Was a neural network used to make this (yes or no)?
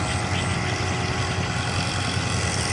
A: no